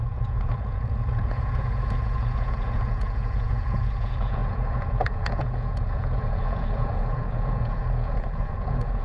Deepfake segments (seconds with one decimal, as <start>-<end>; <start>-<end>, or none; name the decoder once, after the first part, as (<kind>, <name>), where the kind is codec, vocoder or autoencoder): 0.0-9.0 (vocoder, Vocos)